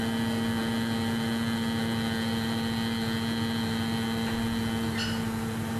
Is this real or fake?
real